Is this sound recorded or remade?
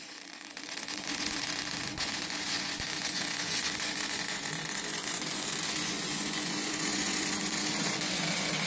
remade